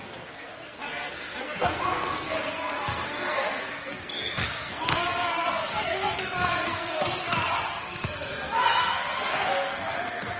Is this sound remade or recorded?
remade